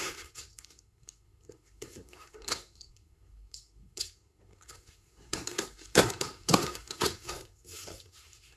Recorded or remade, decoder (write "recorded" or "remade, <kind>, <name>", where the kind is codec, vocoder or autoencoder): remade, codec, SNAC